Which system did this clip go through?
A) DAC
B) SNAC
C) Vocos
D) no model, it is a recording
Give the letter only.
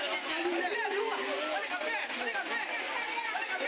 D